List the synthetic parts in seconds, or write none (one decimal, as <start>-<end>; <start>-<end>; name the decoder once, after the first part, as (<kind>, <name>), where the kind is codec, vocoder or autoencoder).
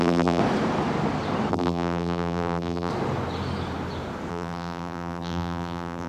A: 0.0-0.4 (vocoder, BigVGAN v2); 1.5-2.9; 4.3-6.1